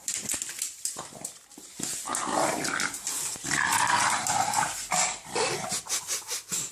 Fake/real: real